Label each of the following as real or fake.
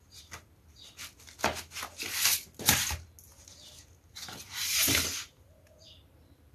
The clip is real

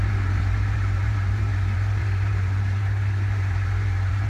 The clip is fake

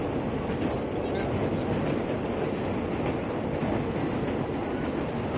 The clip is real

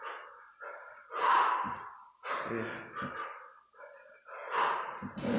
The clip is fake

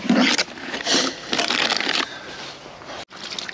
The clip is real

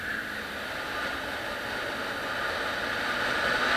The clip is real